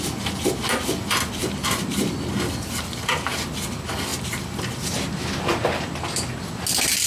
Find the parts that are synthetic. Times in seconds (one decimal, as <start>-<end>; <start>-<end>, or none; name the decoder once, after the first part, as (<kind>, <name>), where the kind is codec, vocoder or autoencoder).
1.4-2.8 (vocoder, BigVGAN v2)